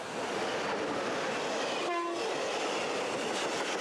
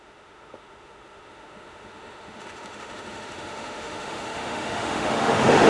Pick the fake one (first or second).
second